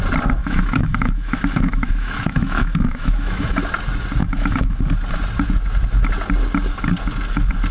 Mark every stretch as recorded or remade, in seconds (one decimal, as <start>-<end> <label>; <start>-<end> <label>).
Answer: 0.0-0.4 recorded; 0.4-3.6 remade; 3.6-4.2 recorded; 4.2-4.8 remade; 4.8-7.7 recorded